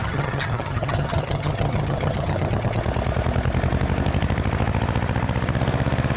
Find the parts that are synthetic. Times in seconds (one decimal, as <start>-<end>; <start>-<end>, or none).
0.0-2.8